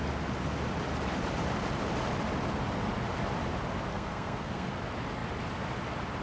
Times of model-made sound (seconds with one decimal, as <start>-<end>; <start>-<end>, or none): 3.9-4.7